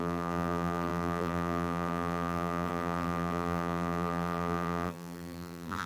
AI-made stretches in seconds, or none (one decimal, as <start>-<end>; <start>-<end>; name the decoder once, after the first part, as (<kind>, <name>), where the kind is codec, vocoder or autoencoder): 0.0-5.9 (vocoder, BigVGAN v2)